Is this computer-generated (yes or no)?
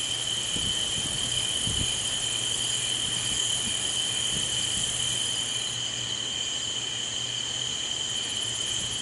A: no